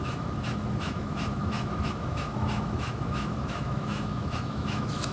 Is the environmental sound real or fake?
fake